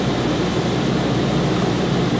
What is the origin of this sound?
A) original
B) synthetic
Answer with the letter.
B